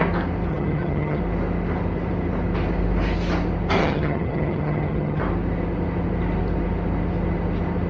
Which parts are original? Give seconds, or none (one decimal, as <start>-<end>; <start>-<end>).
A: 0.0-0.5; 1.2-3.8; 5.2-7.9